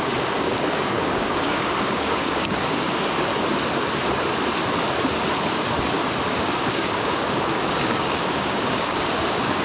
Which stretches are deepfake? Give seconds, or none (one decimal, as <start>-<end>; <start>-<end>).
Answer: 0.0-3.3; 6.3-9.6